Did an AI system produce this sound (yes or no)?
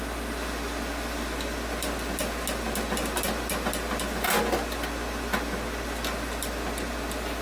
no